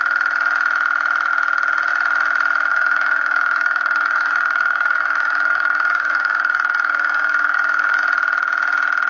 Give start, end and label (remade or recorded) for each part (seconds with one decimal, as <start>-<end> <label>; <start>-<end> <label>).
0.0-2.7 recorded; 2.7-8.0 remade; 8.0-9.1 recorded